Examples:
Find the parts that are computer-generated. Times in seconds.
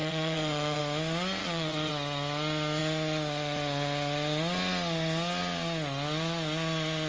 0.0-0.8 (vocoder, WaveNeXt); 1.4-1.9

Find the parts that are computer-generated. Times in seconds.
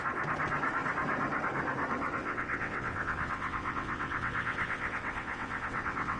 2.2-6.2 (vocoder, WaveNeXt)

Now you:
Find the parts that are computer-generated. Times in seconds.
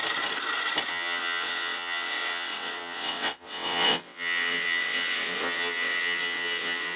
0.9-7.0 (vocoder, WaveNeXt)